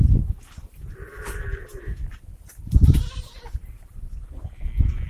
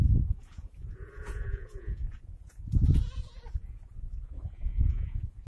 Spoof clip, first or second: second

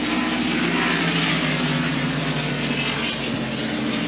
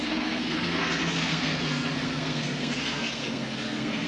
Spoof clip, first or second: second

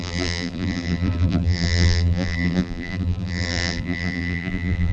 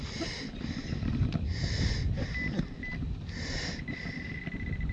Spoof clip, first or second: first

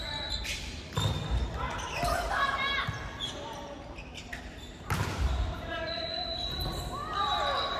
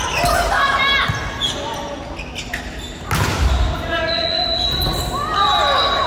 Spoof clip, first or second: first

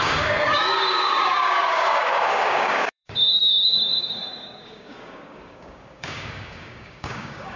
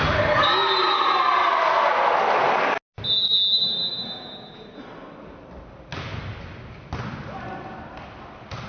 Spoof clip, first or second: first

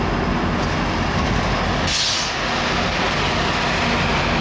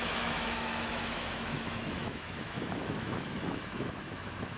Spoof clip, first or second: second